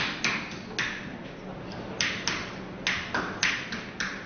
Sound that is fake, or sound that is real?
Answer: real